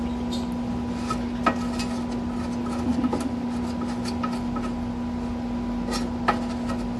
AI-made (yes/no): no